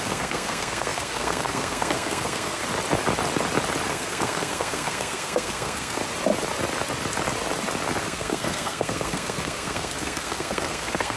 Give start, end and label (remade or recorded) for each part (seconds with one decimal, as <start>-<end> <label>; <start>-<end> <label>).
0.0-2.6 remade; 2.6-3.9 recorded; 3.9-6.0 remade; 6.0-8.0 recorded; 8.0-11.2 remade